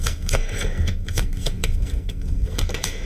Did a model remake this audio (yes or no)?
yes